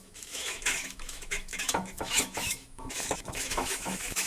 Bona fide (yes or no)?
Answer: no